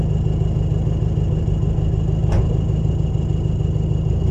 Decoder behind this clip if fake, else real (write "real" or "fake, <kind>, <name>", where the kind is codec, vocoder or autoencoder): real